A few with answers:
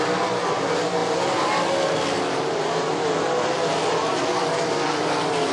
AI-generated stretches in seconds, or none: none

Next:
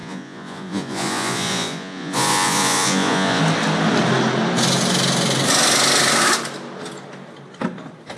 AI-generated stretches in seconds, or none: 0.0-3.4

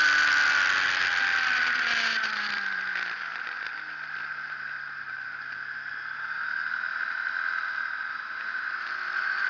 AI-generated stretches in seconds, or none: none

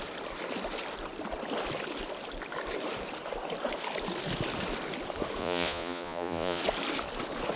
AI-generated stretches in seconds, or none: 5.4-6.6

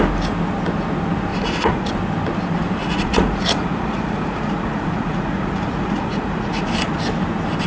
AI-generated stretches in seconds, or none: 1.3-1.9; 2.8-6.7